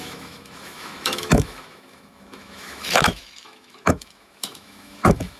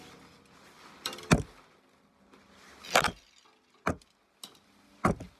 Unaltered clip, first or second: second